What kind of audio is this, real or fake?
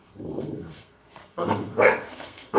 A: fake